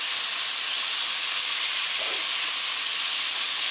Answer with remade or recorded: recorded